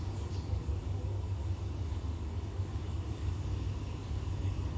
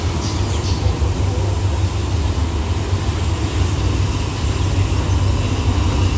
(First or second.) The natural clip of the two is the second